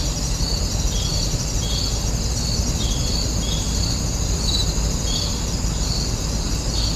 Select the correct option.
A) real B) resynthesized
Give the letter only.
A